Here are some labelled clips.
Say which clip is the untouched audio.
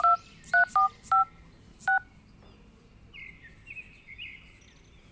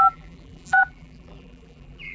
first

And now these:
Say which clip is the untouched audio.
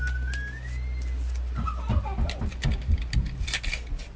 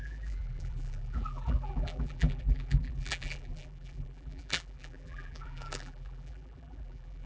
first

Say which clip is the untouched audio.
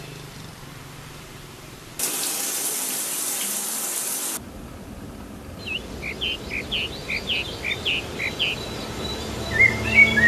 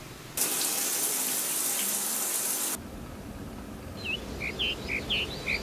second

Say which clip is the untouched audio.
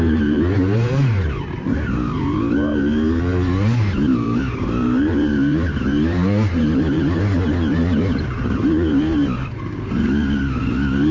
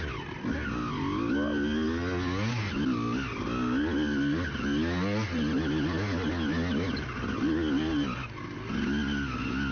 second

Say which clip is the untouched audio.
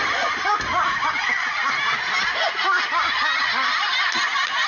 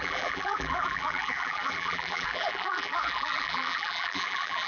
first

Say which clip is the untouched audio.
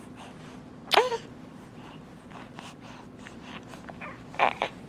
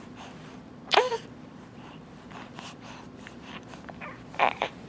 first